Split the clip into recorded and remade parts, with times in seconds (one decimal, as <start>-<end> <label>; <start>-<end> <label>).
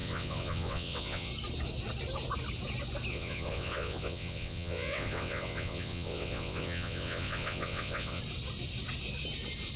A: 0.0-1.3 remade; 1.3-3.1 recorded; 3.1-8.2 remade; 8.2-9.8 recorded